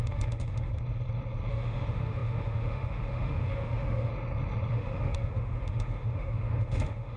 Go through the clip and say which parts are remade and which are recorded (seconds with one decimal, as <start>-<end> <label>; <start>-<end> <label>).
0.0-0.7 remade; 0.7-1.5 recorded; 1.5-4.1 remade; 4.1-4.7 recorded; 4.7-7.2 remade